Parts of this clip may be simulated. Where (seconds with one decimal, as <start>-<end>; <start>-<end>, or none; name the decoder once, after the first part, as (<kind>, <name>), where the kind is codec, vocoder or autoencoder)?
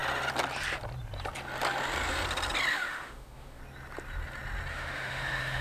2.7-3.6 (autoencoder, DAC-VAE); 4.7-5.6